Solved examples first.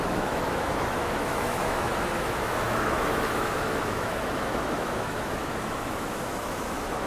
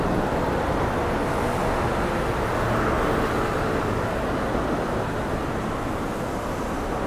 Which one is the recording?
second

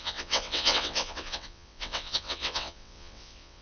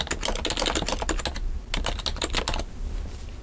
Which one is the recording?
second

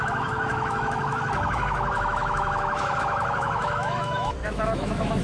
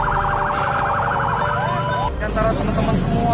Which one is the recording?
second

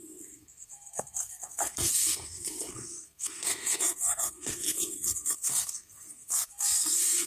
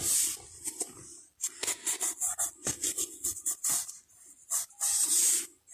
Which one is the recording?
second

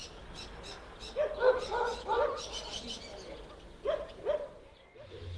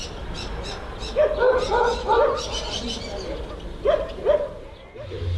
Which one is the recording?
first